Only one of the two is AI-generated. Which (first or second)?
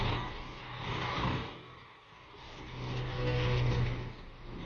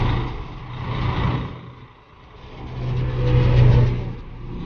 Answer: first